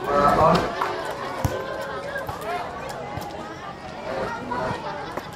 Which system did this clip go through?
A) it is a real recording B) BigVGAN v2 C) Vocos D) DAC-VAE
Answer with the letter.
A